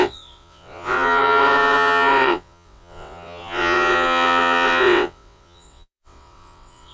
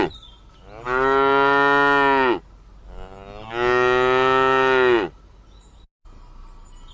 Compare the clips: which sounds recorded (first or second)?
second